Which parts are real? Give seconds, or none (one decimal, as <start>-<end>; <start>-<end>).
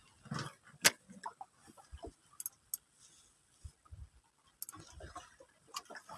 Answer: 0.0-6.2